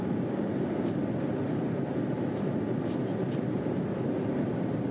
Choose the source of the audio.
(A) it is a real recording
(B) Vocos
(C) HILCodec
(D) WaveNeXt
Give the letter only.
A